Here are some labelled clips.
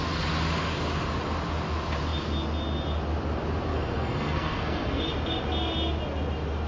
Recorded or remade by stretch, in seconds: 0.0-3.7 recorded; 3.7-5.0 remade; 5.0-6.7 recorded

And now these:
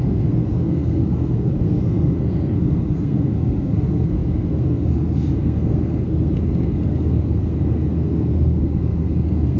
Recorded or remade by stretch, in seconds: 0.0-9.6 remade